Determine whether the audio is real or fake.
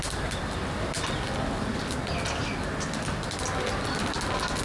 real